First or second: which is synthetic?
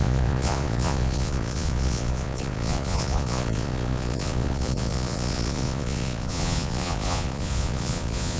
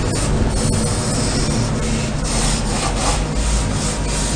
first